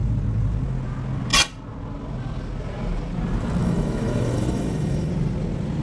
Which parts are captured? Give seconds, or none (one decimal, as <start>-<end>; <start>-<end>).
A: 0.0-3.6; 5.1-5.8